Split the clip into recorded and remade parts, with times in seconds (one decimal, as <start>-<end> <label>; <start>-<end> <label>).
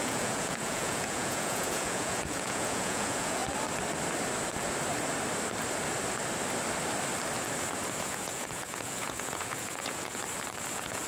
0.0-3.4 remade; 3.4-8.0 recorded; 8.0-10.2 remade; 10.2-10.7 recorded; 10.7-11.1 remade